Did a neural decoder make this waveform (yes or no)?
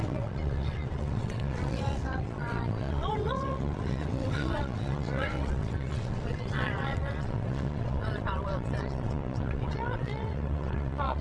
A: yes